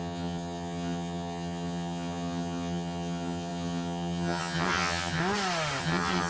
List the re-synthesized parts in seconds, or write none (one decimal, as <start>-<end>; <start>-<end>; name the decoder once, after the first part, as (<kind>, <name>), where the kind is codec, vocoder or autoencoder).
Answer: 0.0-5.2 (vocoder, HiFi-GAN); 5.8-6.3